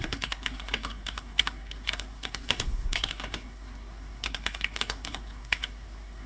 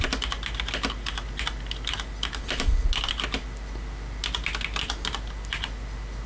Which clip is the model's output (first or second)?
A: first